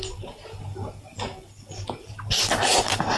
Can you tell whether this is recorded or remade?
recorded